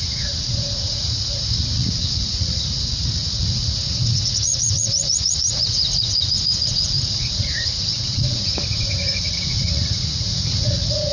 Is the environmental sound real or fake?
fake